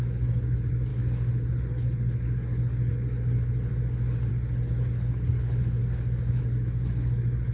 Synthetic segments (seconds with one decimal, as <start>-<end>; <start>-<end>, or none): 0.0-3.7; 4.3-5.8; 6.4-7.5